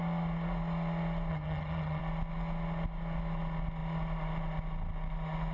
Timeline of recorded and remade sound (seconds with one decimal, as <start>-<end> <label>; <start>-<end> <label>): 0.0-1.3 recorded; 1.3-2.0 remade; 2.0-5.5 recorded